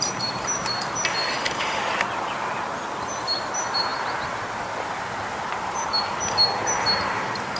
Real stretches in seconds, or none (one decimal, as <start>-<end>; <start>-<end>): 0.0-1.3; 1.8-7.6